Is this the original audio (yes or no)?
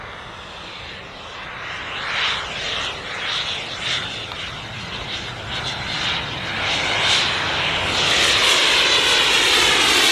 yes